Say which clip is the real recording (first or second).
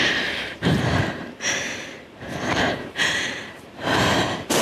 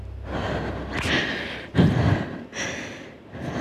second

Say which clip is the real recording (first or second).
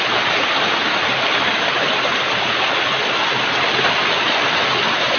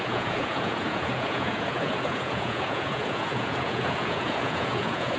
first